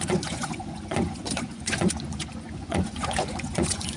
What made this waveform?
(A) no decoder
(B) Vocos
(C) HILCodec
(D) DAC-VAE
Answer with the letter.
B